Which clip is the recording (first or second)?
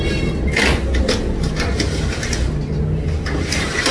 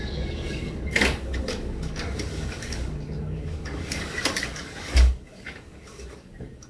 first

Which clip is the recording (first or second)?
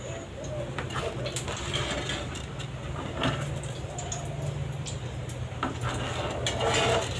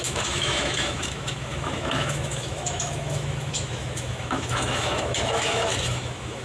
first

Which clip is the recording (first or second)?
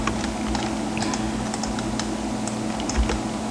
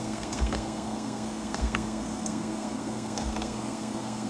first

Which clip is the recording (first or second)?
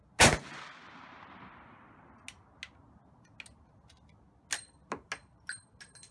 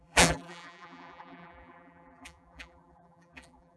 first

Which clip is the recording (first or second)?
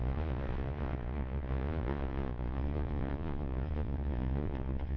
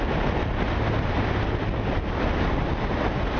second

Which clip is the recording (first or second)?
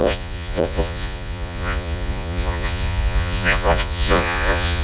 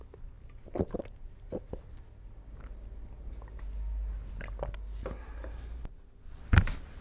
second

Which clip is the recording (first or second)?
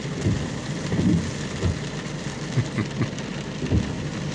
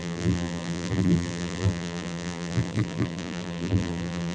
first